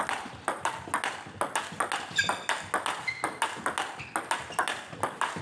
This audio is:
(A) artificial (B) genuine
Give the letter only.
B